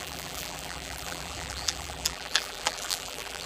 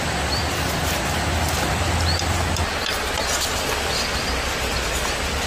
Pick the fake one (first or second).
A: first